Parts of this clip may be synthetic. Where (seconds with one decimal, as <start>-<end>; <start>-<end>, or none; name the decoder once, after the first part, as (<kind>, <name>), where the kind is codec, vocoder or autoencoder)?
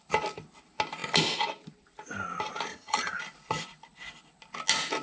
2.7-3.2 (vocoder, HiFi-GAN)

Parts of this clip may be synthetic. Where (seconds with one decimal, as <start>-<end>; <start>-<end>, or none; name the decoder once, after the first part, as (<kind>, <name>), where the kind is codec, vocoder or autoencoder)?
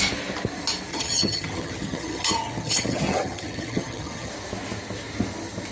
0.9-4.3 (vocoder, HiFi-GAN)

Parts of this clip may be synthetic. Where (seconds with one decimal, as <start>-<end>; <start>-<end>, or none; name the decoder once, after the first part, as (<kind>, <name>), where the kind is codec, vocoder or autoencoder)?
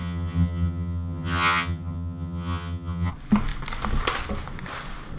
0.0-3.1 (vocoder, HiFi-GAN)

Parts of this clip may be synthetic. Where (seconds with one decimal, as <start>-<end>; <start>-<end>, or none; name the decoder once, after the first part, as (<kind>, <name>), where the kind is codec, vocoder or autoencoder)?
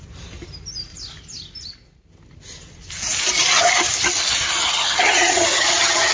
4.6-6.1 (vocoder, HiFi-GAN)